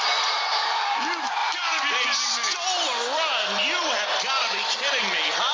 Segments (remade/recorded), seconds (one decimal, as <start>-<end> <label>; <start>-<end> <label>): 0.0-5.5 recorded